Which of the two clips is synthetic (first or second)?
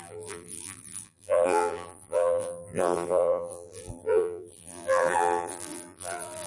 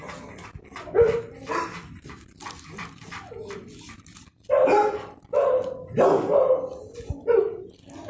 first